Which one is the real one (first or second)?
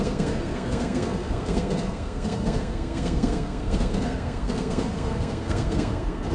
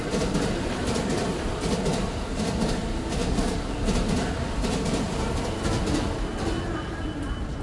second